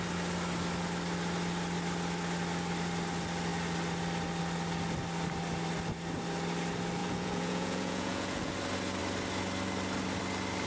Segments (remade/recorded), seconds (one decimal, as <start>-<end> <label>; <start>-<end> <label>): 0.0-7.0 recorded; 7.0-8.5 remade; 8.5-10.7 recorded